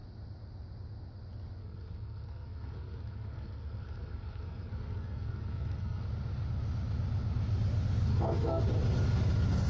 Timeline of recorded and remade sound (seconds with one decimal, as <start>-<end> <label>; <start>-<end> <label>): 0.0-1.6 recorded; 1.6-6.0 remade; 6.0-8.1 recorded; 8.1-8.6 remade; 8.6-9.7 recorded